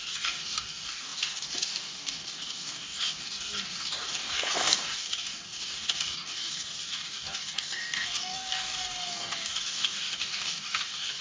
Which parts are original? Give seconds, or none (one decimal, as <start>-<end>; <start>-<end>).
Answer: none

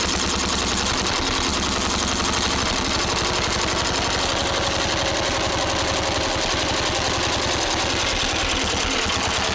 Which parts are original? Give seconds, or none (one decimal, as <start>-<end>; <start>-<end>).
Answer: 0.0-9.5

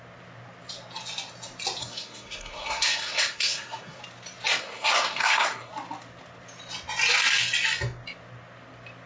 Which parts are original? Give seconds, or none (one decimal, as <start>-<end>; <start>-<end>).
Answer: 0.0-1.8; 4.0-4.6; 5.7-9.1

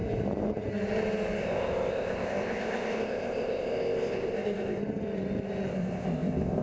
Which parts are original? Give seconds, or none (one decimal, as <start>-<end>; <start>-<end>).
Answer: 0.0-1.4; 4.8-5.7

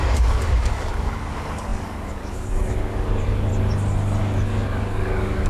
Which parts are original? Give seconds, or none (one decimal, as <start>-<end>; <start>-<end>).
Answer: 3.5-4.2

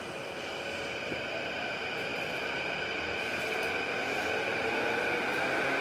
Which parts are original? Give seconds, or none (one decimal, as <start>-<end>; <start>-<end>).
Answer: 0.0-5.8